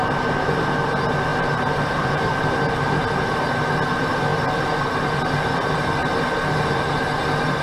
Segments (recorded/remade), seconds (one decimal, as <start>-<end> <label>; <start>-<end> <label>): 0.0-1.3 recorded; 1.3-2.5 remade; 2.5-7.6 recorded